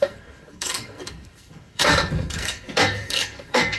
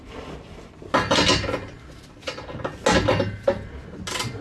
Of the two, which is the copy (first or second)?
first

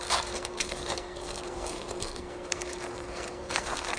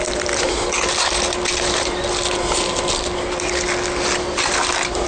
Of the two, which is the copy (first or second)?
first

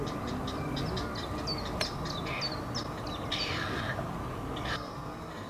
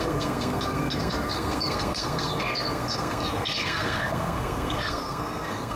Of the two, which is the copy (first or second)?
second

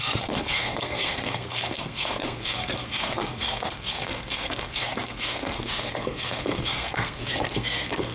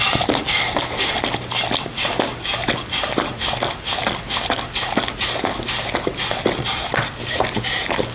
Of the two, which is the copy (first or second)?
first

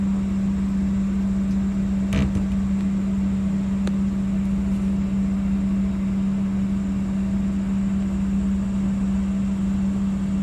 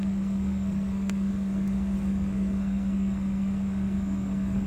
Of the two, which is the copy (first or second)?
second